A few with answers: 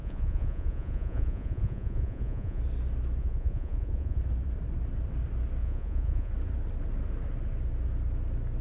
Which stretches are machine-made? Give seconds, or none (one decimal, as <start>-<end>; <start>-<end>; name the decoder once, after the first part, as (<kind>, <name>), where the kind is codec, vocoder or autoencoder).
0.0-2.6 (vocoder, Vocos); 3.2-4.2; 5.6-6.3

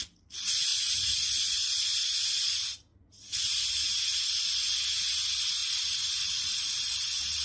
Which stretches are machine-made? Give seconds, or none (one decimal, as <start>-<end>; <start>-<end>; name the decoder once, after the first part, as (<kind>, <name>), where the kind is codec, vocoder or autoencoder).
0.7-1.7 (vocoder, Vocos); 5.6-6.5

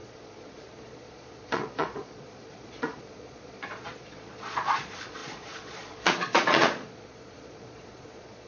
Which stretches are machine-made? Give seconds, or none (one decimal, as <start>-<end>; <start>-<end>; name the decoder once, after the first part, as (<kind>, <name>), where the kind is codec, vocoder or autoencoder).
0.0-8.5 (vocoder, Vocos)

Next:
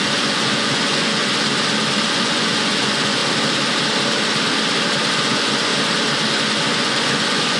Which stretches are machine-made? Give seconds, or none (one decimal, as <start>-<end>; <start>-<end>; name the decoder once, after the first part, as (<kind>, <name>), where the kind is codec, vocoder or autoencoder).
0.0-1.2 (vocoder, Vocos); 2.1-3.2; 5.1-5.7; 6.3-7.6

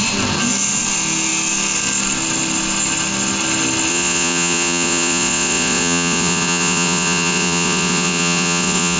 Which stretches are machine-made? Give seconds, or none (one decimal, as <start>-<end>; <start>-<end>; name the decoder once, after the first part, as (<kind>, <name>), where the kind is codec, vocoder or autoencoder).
3.9-9.0 (vocoder, Vocos)

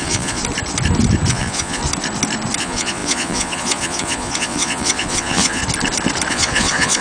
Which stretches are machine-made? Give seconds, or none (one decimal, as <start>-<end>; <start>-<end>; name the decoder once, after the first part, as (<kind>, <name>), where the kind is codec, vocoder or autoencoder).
0.0-0.4 (vocoder, Vocos); 1.3-1.8; 2.6-5.6; 6.3-7.0